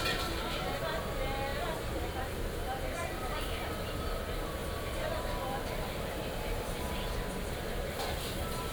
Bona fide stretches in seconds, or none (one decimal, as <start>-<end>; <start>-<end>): 0.0-1.5; 2.2-4.6

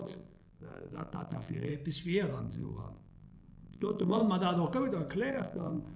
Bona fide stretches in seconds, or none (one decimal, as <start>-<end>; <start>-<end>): 1.7-2.4; 4.2-5.3

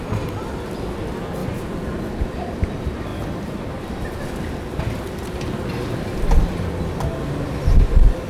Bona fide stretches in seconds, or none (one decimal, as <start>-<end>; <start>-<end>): 0.0-8.3

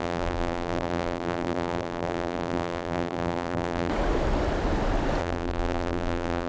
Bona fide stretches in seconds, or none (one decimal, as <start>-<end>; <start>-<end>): 3.9-5.2

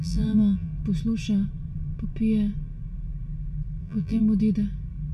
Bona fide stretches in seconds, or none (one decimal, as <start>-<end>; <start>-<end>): 0.7-3.8; 4.2-5.1

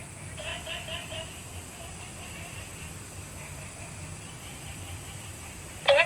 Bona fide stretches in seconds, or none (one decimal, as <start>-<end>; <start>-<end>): 0.5-2.0